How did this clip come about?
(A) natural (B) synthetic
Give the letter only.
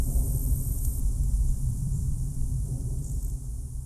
B